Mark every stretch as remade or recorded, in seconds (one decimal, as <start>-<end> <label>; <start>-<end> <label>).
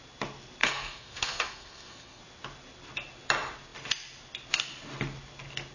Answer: 0.0-0.6 recorded; 0.6-2.2 remade; 2.2-5.7 recorded